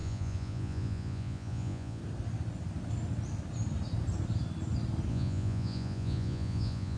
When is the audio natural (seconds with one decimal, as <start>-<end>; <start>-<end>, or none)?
2.0-5.1